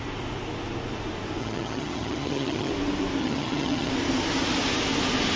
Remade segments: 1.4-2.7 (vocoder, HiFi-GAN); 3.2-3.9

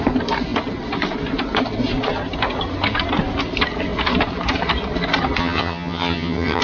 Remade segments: 5.4-6.6 (vocoder, HiFi-GAN)

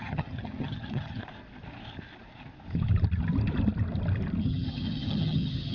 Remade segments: 0.0-1.2 (vocoder, HiFi-GAN); 4.4-5.7

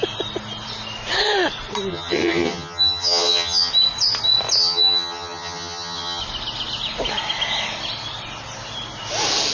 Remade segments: 1.9-3.7 (vocoder, HiFi-GAN); 4.6-6.2

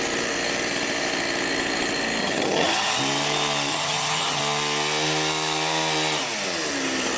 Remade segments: 2.2-3.0 (vocoder, HiFi-GAN); 3.7-4.4

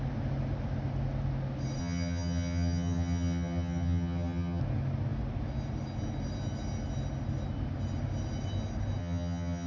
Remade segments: 1.8-4.6 (vocoder, HiFi-GAN); 9.0-9.7